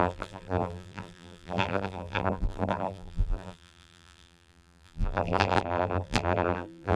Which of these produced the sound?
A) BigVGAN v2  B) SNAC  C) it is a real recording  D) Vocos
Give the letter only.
A